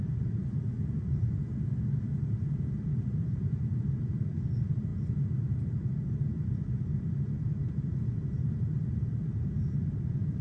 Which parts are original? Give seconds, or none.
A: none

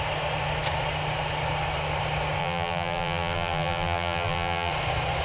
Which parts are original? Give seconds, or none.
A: 0.0-2.4; 4.7-5.2

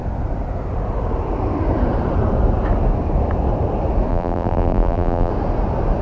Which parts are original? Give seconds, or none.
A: 0.0-4.1; 5.3-6.0

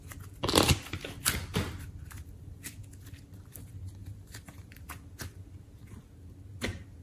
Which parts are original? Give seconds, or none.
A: 0.0-4.0; 4.9-7.0

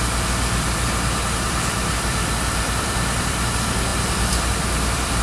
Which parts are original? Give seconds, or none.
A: none

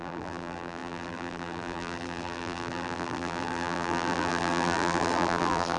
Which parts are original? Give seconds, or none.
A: none